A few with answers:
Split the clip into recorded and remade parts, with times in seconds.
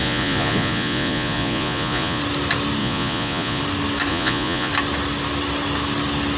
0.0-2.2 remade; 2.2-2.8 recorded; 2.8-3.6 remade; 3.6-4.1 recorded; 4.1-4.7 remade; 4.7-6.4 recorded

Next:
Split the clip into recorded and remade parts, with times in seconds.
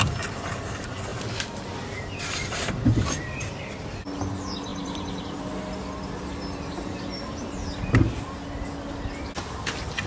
0.0-4.7 recorded; 4.7-5.4 remade; 5.4-10.1 recorded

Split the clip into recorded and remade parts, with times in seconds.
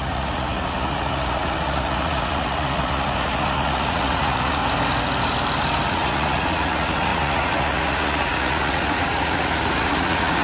0.0-4.6 remade; 4.6-5.9 recorded; 5.9-10.4 remade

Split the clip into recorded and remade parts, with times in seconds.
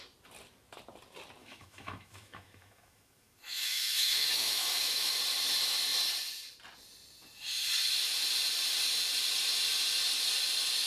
0.0-1.4 recorded; 1.4-5.2 remade; 5.2-10.9 recorded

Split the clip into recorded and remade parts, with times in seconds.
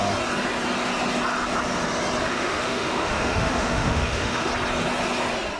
0.0-2.2 recorded; 2.2-4.5 remade; 4.5-5.6 recorded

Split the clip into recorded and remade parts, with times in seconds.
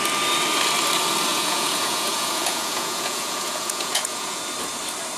0.0-1.3 recorded; 1.3-4.4 remade; 4.4-5.2 recorded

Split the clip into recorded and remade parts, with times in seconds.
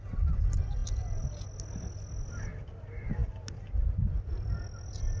0.0-5.2 recorded